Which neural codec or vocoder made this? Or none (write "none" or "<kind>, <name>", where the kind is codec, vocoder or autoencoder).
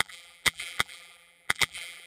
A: vocoder, BigVGAN v2